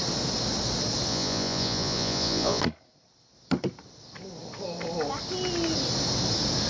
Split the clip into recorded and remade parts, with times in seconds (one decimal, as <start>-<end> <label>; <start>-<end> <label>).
0.0-1.1 recorded; 1.1-2.6 remade; 2.6-6.7 recorded